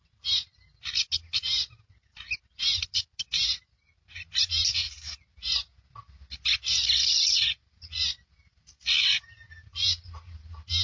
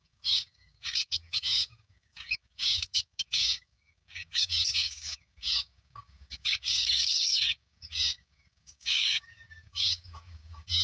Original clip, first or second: first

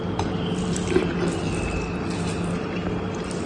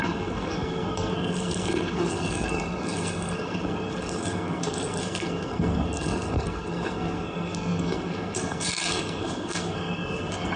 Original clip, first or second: first